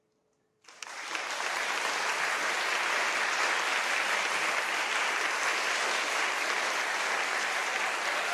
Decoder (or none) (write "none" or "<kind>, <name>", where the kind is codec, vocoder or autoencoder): none